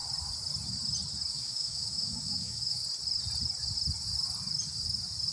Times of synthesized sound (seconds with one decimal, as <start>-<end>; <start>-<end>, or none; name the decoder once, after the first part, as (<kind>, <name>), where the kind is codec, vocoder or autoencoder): 1.3-2.8 (autoencoder, DAC-VAE)